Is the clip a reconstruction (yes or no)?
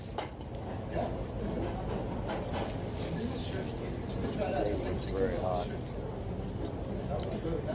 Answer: no